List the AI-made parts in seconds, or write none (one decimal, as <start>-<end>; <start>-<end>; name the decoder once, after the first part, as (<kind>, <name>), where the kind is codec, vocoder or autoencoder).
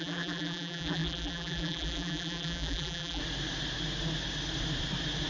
0.0-3.2 (vocoder, BigVGAN v2)